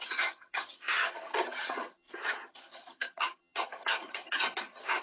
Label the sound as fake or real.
fake